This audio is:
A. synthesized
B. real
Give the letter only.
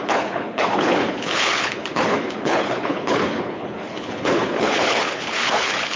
A